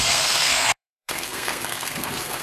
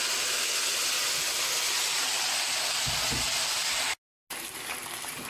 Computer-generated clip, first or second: first